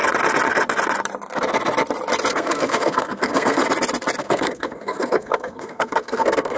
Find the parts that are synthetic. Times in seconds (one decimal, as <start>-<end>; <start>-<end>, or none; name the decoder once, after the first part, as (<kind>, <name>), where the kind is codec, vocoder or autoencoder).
2.3-3.6 (codec, SNAC); 4.2-6.6